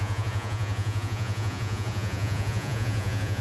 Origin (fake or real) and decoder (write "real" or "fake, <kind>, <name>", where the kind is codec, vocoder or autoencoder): fake, vocoder, Vocos